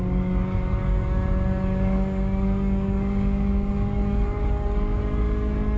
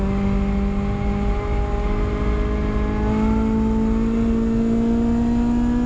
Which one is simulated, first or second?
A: first